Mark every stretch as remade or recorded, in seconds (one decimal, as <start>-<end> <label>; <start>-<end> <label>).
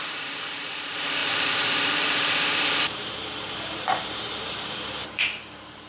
0.0-5.9 remade